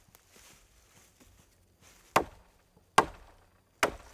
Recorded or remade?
recorded